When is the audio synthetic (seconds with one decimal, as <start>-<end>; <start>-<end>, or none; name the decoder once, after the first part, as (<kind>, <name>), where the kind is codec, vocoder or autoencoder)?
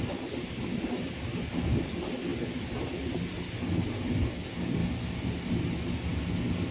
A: none